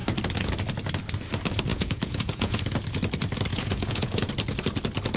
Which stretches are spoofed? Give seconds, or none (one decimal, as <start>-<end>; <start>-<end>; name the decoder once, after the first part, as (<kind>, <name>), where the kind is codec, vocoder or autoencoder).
1.7-2.6 (vocoder, Vocos); 3.5-4.3